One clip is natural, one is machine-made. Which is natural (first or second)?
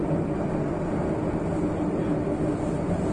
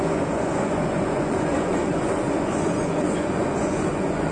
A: first